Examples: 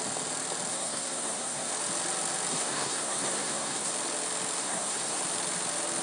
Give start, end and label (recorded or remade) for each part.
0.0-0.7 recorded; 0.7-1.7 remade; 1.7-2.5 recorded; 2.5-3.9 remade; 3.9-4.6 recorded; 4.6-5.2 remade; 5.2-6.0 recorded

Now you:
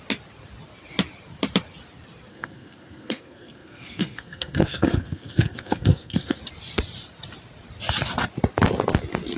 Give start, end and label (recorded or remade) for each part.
0.0-2.3 recorded; 2.3-6.4 remade; 6.4-9.4 recorded

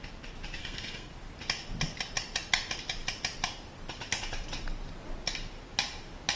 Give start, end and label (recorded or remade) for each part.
0.0-0.6 recorded; 0.6-1.1 remade; 1.1-6.4 recorded

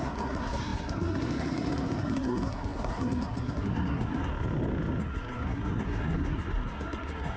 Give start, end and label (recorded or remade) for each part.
0.0-4.3 remade; 4.3-5.0 recorded; 5.0-7.4 remade

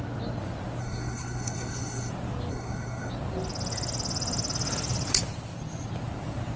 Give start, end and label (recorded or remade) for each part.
0.0-0.8 recorded; 0.8-2.1 remade; 2.1-2.5 recorded; 2.5-3.1 remade; 3.1-6.6 recorded